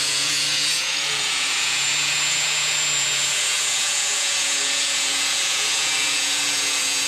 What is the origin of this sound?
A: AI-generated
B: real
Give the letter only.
A